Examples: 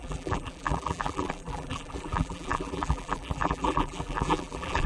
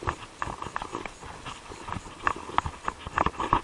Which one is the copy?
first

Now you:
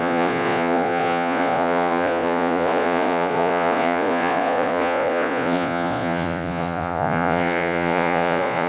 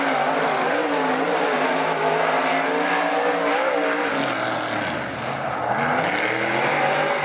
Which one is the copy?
first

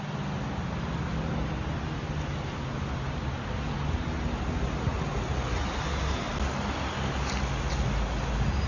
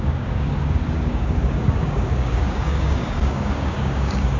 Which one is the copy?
second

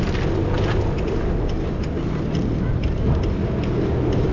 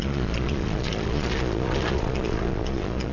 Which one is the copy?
second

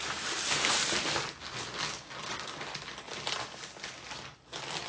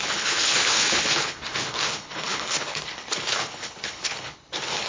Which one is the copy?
second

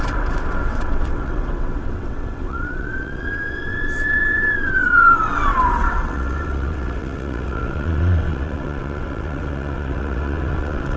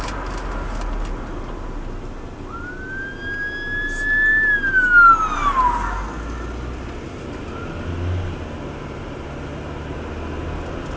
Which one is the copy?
first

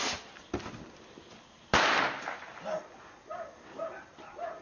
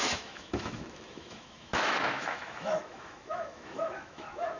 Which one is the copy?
second